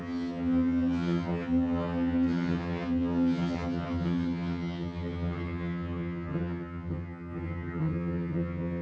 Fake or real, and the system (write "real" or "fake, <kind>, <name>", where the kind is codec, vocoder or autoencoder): fake, vocoder, HiFi-GAN